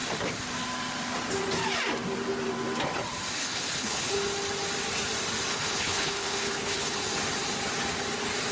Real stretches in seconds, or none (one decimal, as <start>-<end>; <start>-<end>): 0.0-3.4; 4.1-5.5; 7.0-8.5

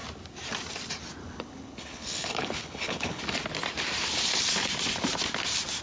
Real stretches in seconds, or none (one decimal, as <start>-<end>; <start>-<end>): 0.0-1.2; 3.2-5.8